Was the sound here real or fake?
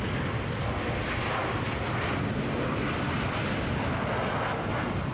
real